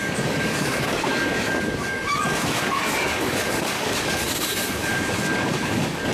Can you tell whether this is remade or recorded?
remade